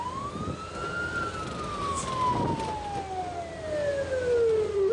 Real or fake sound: real